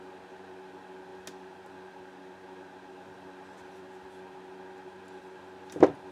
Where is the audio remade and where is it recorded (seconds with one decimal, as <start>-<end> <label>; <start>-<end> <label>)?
0.0-6.1 recorded